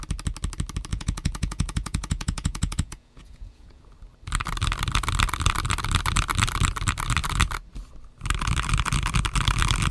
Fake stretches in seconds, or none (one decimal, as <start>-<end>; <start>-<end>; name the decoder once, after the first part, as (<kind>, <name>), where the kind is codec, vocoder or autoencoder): 0.9-3.8 (vocoder, Vocos)